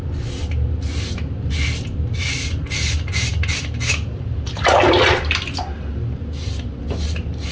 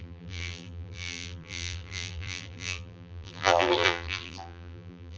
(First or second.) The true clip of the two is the first